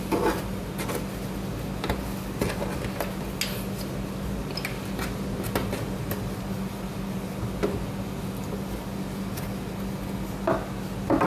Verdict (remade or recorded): recorded